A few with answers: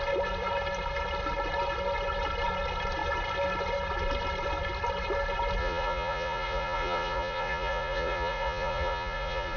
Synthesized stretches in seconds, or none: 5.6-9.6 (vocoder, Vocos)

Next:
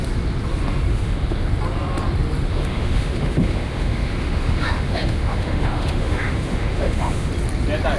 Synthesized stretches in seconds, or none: 0.9-1.5 (autoencoder, DAC-VAE); 2.5-7.3

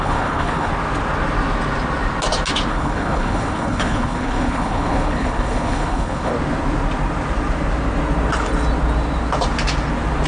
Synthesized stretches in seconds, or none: 0.0-0.7 (codec, HILCodec); 2.7-6.3

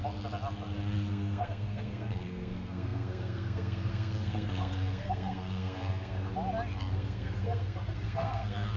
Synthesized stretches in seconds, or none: 1.1-6.3 (codec, SNAC); 6.8-8.8

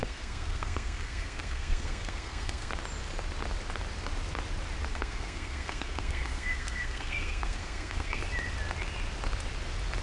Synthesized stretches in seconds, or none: 0.0-2.7 (codec, SNAC); 4.9-8.2

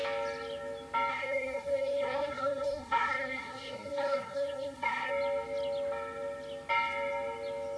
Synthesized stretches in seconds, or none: 1.1-5.1 (codec, SNAC)